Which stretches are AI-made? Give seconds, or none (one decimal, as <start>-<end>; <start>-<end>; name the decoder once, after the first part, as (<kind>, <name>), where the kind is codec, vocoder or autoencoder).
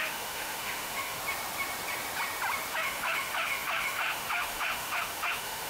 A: 0.0-1.2 (autoencoder, DAC-VAE); 2.7-5.7